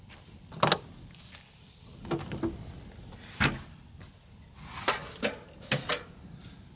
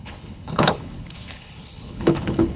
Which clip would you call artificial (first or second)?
second